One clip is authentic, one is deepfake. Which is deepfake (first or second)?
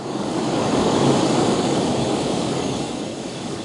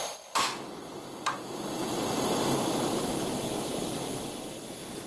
first